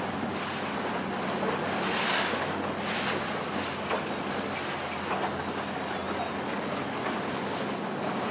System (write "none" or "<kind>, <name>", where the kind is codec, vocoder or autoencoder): none